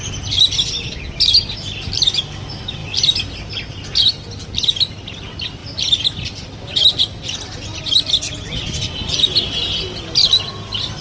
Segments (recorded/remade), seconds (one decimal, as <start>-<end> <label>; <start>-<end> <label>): 0.0-11.0 recorded